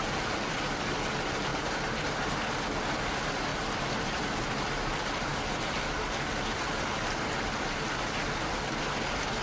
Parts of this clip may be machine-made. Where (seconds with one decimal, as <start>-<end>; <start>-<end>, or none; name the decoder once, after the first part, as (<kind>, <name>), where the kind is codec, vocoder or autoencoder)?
1.5-2.3 (vocoder, BigVGAN v2); 3.5-4.6